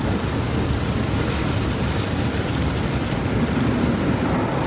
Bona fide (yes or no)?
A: no